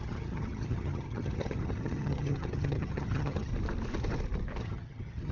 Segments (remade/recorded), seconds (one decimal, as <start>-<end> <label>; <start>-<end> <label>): 0.0-3.5 remade; 3.5-4.6 recorded; 4.6-5.3 remade